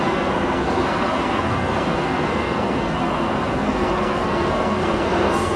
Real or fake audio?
fake